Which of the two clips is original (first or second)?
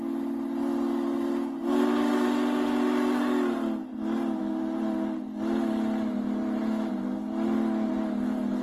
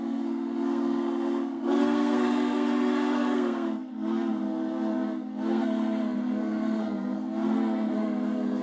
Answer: first